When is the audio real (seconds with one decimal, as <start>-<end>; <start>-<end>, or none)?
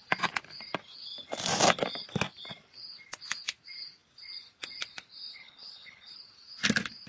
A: 0.0-5.3; 6.1-7.1